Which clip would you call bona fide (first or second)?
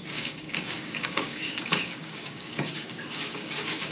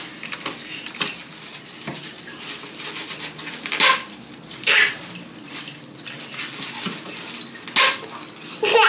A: second